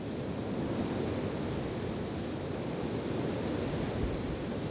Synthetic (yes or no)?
no